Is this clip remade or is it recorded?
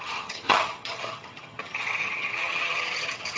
remade